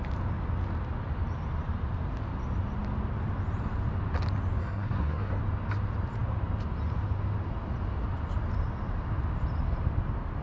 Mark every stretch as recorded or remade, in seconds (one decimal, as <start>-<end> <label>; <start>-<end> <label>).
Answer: 0.0-4.6 recorded; 4.6-5.4 remade; 5.4-10.4 recorded